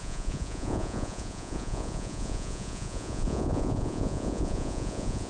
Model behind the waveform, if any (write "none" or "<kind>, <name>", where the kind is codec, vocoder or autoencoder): vocoder, Vocos